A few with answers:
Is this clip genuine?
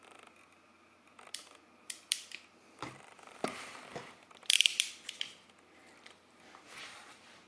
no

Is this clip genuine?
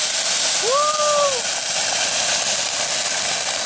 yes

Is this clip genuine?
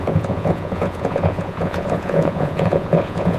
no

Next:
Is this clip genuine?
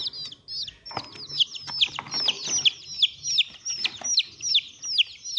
yes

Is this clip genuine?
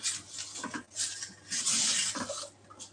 yes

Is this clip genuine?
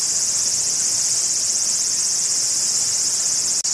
yes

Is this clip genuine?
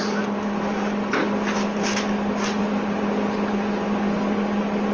yes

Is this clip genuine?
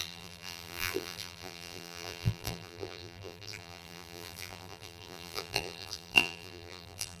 no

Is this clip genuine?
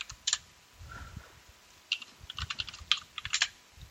yes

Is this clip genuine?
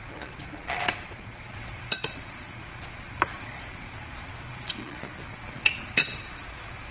no